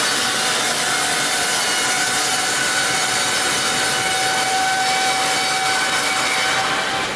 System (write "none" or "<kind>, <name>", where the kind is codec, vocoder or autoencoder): none